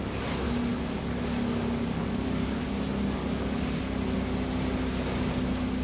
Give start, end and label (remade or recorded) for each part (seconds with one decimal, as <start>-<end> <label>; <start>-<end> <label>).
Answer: 0.0-0.7 recorded; 0.7-2.6 remade; 2.6-3.2 recorded; 3.2-3.8 remade; 3.8-5.8 recorded